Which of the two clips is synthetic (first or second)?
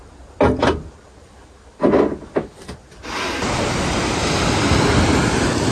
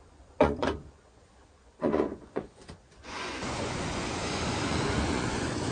second